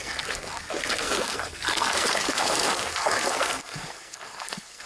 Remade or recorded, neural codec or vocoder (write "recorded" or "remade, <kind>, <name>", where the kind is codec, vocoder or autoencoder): remade, codec, SNAC